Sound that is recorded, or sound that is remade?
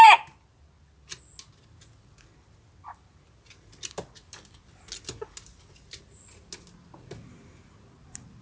recorded